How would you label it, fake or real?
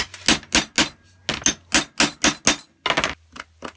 real